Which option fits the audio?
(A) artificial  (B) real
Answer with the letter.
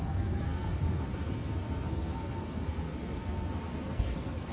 A